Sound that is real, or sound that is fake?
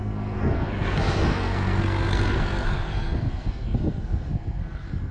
fake